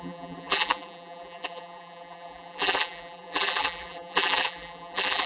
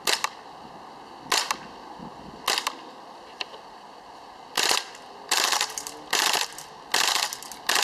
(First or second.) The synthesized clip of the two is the first